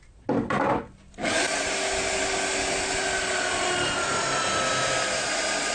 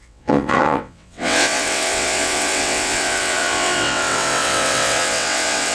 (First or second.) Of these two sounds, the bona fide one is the first